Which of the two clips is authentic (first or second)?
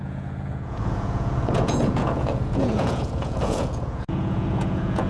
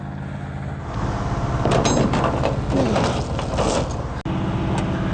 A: second